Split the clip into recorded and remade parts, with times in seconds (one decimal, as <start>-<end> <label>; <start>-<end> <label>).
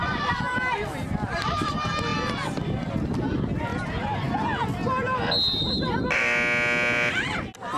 0.0-1.7 remade; 1.7-2.1 recorded; 2.1-2.9 remade; 2.9-7.8 recorded